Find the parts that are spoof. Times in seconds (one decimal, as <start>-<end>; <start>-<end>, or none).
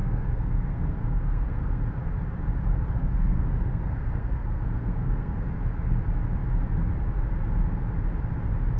0.0-1.8; 3.0-5.5